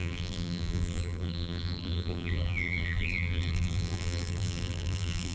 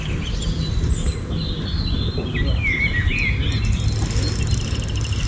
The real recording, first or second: second